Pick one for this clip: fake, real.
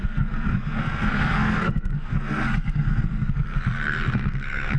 fake